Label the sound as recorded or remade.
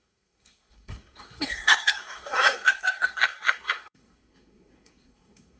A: remade